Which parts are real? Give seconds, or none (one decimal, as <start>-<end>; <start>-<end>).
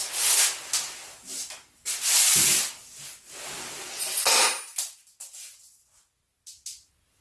0.0-7.2